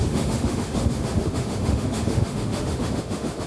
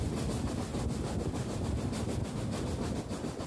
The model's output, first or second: first